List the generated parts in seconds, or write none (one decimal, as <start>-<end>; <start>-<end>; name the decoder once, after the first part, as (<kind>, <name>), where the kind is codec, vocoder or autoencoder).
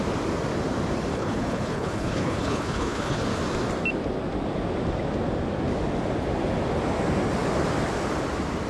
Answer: 1.1-3.2 (codec, HILCodec)